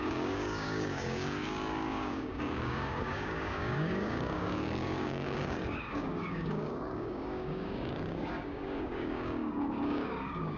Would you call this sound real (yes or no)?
no